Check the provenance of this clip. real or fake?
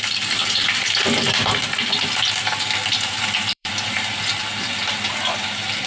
fake